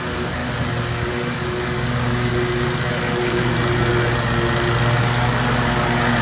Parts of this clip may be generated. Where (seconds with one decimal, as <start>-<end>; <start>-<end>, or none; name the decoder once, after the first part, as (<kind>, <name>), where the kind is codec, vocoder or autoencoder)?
0.0-0.4 (codec, DAC); 1.1-2.3; 2.9-3.5; 5.0-6.2